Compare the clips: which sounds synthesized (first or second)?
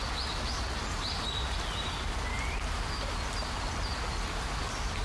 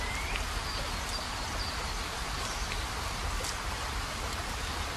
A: second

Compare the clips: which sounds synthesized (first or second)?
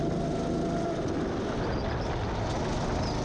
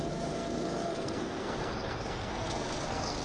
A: second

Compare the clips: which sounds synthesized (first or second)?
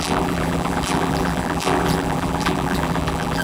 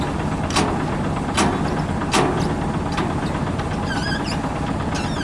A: first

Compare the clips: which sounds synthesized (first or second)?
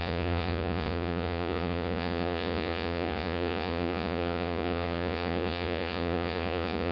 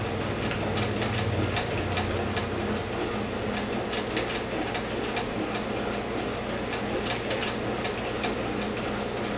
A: first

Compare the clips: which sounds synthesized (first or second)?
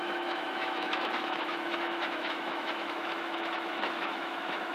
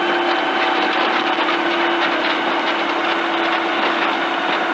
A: first